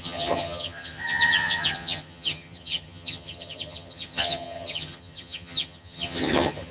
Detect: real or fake fake